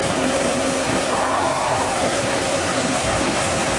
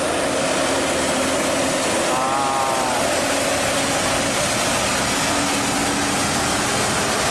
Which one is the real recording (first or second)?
second